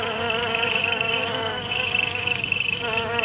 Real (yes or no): no